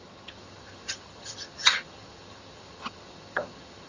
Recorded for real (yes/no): no